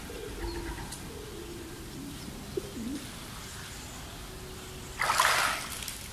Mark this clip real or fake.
real